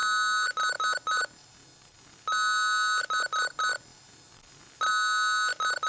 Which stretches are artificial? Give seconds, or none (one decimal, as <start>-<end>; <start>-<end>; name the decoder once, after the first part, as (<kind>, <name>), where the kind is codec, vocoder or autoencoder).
none

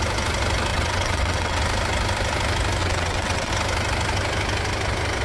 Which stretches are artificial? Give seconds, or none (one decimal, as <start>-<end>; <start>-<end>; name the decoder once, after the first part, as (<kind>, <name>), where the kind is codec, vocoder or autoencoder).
0.7-1.6 (vocoder, WaveNeXt); 2.8-3.5

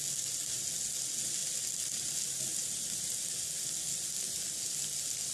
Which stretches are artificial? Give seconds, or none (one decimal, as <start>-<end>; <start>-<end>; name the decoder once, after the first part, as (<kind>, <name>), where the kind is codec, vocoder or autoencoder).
none

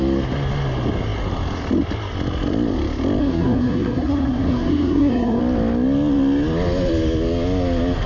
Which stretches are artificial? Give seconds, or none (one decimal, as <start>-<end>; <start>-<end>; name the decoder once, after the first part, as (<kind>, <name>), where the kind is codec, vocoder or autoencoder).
3.2-5.4 (codec, SNAC)

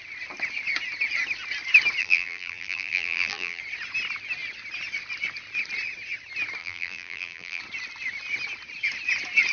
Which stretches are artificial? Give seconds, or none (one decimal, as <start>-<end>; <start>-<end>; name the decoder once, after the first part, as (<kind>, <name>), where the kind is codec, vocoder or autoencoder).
2.0-3.6 (vocoder, BigVGAN v2); 6.6-7.6

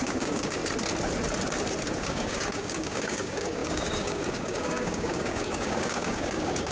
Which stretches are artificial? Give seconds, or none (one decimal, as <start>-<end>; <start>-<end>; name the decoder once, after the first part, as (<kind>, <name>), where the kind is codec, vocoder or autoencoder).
0.0-0.6 (codec, DAC); 2.0-6.7

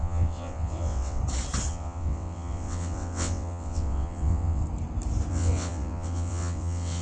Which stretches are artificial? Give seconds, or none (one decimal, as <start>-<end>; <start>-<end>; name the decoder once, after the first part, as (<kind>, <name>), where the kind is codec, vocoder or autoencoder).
0.0-1.2 (vocoder, WaveNeXt); 1.7-4.6; 5.3-7.0

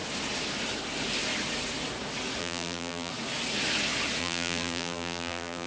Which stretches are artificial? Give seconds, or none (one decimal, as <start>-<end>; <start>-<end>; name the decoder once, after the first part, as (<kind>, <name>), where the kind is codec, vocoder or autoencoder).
2.4-3.1 (vocoder, BigVGAN v2); 4.2-5.7